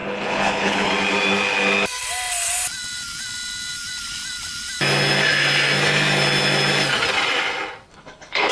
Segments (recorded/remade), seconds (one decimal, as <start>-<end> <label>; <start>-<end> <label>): 0.0-0.9 remade; 0.9-7.9 recorded; 7.9-8.5 remade